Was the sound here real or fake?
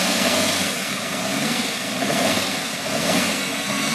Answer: fake